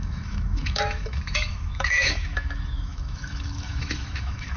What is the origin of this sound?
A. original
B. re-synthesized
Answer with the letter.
B